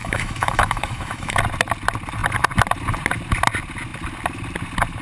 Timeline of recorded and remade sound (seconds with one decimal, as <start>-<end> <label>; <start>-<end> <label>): 0.0-1.4 remade; 1.4-5.0 recorded